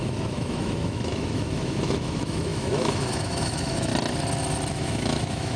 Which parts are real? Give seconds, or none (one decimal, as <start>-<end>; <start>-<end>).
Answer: 3.9-4.7